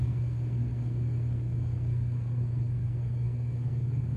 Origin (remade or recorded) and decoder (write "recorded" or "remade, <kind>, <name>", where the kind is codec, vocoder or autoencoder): remade, codec, SNAC